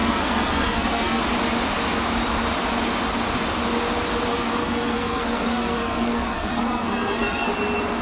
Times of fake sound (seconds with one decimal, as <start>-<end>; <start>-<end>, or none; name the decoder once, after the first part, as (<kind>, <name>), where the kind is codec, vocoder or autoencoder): 0.0-1.2 (codec, SNAC); 4.3-7.5